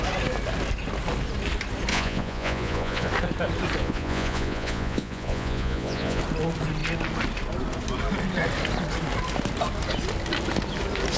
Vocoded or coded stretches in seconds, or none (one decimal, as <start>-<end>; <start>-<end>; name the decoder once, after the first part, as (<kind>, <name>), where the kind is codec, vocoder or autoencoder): 1.9-3.1 (vocoder, Vocos); 3.8-6.2